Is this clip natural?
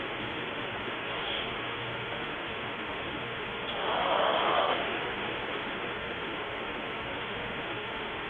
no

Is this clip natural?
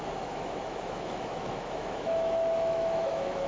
no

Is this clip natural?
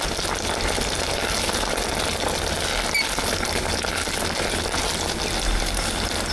yes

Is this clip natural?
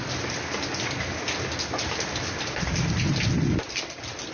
yes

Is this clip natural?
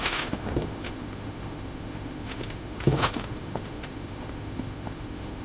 no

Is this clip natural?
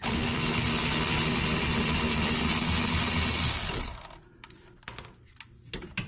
yes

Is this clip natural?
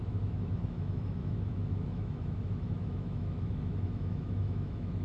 no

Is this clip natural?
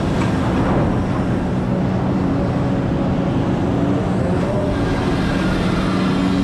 yes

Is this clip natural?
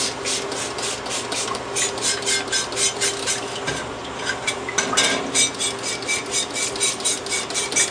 yes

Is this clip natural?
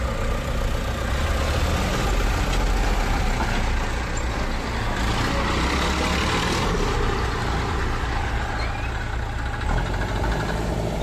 yes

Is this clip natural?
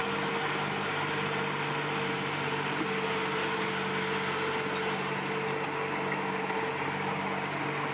yes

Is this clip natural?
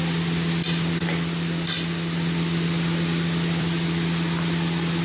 yes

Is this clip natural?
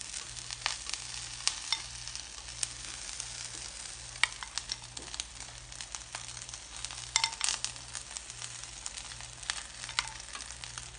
yes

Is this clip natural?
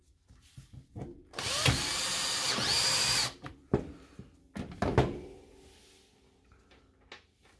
yes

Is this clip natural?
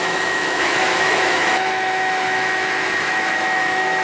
no